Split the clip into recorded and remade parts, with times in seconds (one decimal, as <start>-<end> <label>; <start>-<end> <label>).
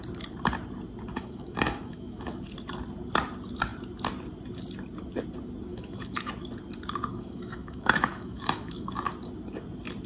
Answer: 0.0-1.1 recorded; 1.1-2.4 remade; 2.4-5.7 recorded; 5.7-6.3 remade; 6.3-7.1 recorded; 7.1-9.1 remade; 9.1-10.1 recorded